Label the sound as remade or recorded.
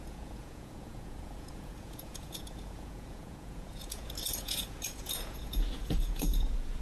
remade